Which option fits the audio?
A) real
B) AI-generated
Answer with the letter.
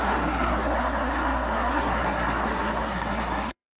B